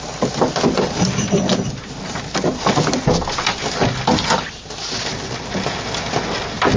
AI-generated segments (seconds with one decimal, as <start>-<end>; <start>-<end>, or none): none